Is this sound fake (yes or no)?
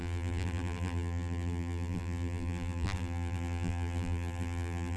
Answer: yes